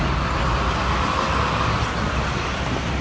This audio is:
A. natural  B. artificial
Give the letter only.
A